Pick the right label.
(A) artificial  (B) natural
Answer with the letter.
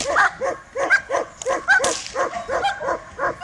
B